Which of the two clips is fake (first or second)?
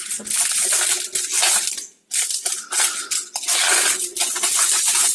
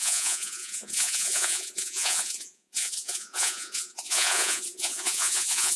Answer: second